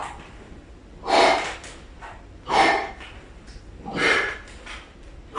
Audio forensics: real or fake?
real